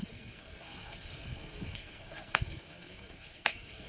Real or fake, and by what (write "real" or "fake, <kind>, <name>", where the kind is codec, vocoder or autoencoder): fake, codec, SNAC